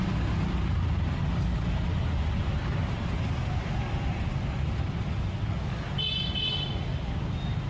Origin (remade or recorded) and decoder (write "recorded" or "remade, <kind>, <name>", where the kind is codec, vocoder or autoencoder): recorded